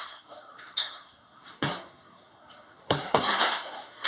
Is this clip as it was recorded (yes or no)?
no